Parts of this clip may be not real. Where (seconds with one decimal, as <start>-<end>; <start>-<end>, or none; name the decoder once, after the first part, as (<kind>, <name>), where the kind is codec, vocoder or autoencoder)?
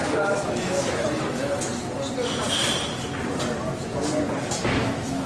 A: 0.0-1.7 (autoencoder, DAC-VAE); 4.8-5.3